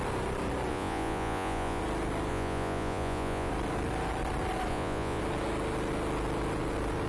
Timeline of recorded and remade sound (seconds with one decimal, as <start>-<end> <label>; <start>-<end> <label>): 0.0-0.7 recorded; 0.7-1.8 remade; 1.8-2.3 recorded; 2.3-3.5 remade; 3.5-4.7 recorded; 4.7-5.2 remade; 5.2-7.1 recorded